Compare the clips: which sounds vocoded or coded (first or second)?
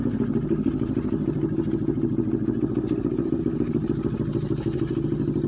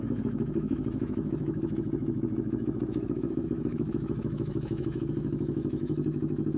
second